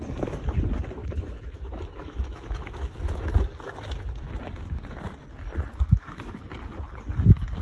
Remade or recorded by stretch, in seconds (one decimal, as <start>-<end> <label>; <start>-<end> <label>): 0.0-1.0 recorded; 1.0-3.3 remade; 3.3-5.7 recorded; 5.7-6.4 remade; 6.4-7.6 recorded